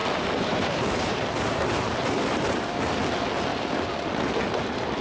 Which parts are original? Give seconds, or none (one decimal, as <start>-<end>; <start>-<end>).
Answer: 3.0-3.5; 4.1-5.0